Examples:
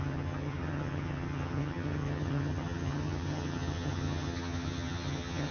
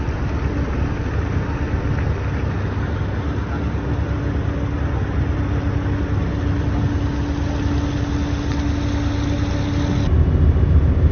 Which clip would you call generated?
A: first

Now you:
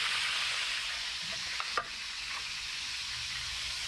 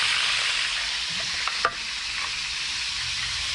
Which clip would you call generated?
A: first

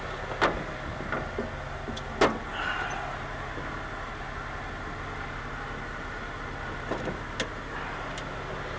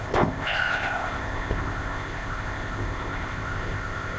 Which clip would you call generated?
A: second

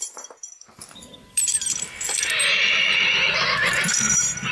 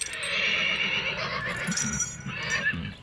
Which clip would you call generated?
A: first